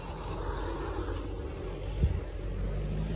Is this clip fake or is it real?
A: real